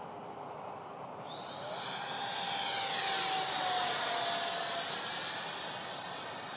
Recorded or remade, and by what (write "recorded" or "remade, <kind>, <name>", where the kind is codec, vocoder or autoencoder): recorded